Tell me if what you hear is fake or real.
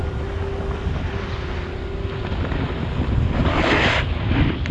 real